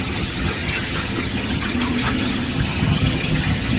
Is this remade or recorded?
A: remade